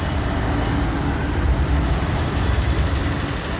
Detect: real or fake real